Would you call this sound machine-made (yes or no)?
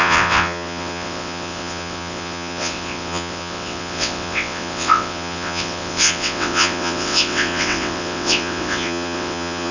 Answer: yes